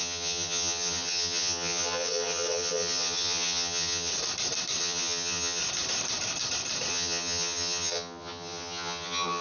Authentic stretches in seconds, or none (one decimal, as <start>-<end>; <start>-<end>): 4.1-4.8; 5.6-6.9